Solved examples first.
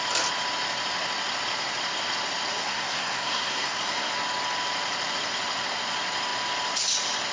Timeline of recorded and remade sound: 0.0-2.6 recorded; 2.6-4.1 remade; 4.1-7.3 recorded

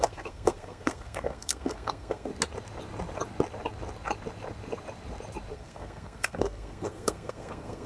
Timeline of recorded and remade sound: 0.0-2.3 remade; 2.3-5.5 recorded; 5.5-7.9 remade